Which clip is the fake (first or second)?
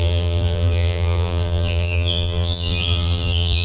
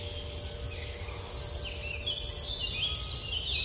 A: first